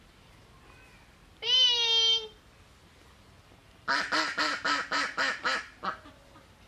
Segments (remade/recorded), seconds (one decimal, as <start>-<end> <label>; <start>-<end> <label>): 0.0-6.7 recorded